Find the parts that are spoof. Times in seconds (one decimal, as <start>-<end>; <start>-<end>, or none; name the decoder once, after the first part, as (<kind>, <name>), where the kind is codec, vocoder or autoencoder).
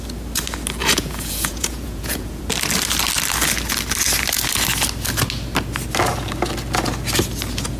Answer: 0.8-2.4 (vocoder, Vocos)